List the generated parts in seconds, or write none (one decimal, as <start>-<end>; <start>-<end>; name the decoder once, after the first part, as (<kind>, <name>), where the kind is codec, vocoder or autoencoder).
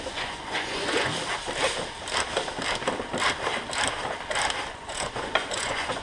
0.0-1.1 (vocoder, Vocos); 4.7-6.0